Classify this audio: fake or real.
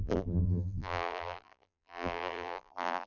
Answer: fake